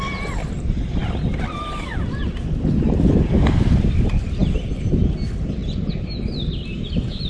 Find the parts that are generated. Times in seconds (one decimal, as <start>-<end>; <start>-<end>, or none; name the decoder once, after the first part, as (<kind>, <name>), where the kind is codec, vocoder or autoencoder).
none